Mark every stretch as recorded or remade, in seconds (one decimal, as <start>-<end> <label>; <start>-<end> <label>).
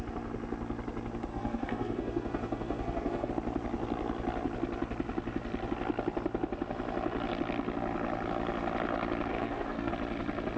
0.0-1.3 recorded; 1.3-3.3 remade; 3.3-9.3 recorded; 9.3-9.9 remade; 9.9-10.6 recorded